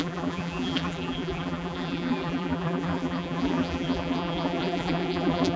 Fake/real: fake